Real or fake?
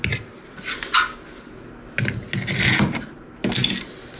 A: real